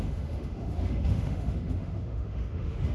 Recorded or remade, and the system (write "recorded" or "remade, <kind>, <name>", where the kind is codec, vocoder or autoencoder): remade, autoencoder, DAC-VAE